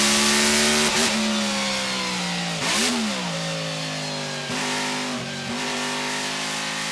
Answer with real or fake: real